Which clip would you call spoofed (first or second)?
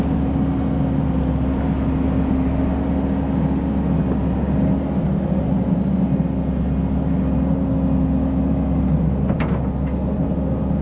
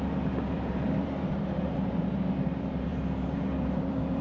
second